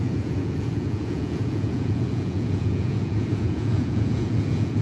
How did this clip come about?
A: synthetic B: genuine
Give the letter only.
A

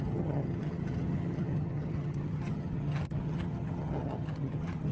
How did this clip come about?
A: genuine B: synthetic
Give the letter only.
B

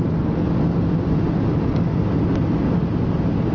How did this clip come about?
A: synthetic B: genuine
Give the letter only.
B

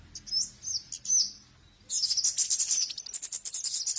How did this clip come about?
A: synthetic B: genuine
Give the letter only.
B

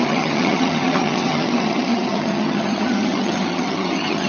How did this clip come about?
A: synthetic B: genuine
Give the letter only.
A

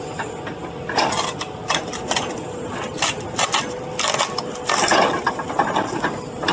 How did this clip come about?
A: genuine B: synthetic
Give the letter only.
A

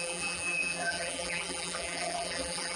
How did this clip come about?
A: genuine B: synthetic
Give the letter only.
B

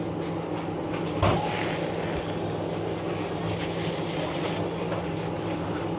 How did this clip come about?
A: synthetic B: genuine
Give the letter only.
B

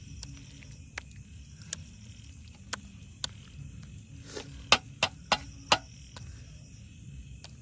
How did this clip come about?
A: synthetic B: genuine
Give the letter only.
B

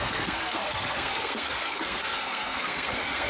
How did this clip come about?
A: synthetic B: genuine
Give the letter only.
A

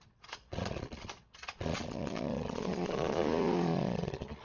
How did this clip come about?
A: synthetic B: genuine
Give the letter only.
A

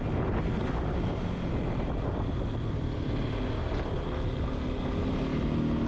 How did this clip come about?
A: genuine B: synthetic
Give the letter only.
A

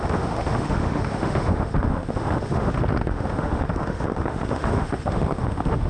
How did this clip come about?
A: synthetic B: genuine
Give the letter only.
A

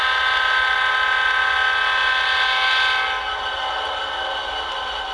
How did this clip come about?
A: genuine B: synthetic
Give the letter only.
A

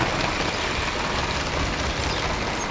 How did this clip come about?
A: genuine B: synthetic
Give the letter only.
A